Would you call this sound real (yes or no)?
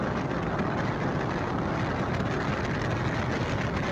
yes